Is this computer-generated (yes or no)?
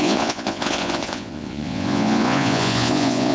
yes